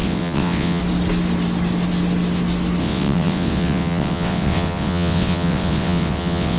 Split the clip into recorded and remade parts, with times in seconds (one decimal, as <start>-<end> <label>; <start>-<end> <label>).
0.0-0.8 remade; 0.8-2.8 recorded; 2.8-6.6 remade